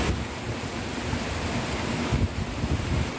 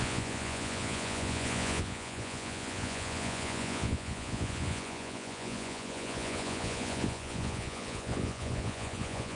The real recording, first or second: first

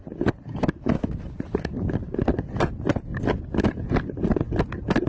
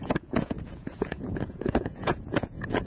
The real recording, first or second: first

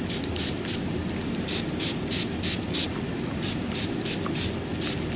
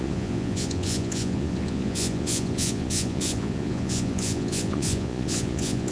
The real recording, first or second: first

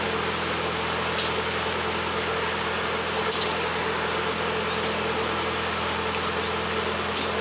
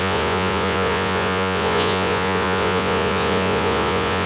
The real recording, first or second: first